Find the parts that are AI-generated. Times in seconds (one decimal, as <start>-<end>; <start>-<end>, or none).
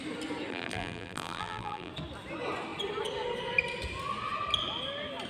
0.5-1.9